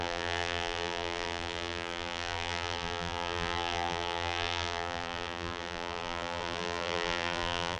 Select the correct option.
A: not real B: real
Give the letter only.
A